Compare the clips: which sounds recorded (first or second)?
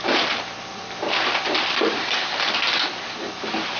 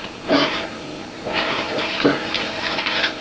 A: first